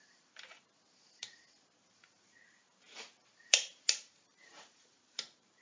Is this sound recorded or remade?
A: remade